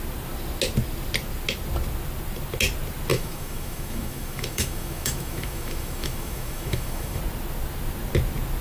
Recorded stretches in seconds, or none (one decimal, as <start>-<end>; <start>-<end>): 0.0-3.1; 7.2-8.6